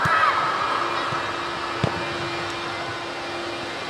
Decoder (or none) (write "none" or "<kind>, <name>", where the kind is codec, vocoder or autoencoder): none